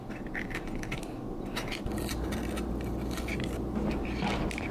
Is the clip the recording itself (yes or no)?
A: yes